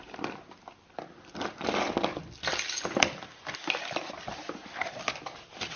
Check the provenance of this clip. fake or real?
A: real